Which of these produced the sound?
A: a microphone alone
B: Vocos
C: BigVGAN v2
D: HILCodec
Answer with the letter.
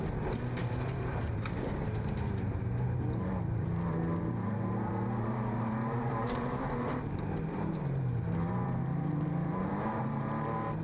C